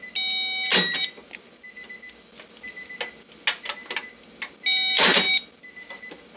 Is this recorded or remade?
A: recorded